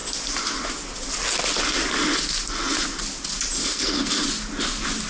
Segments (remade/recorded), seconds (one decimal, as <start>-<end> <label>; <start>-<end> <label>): 0.0-3.6 recorded; 3.6-4.2 remade; 4.2-5.1 recorded